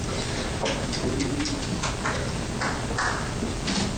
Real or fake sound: real